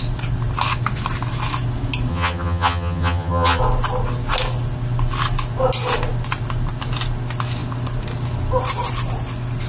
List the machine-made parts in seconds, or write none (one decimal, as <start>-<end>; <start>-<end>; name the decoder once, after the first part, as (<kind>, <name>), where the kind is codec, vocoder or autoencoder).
2.1-3.6 (vocoder, HiFi-GAN)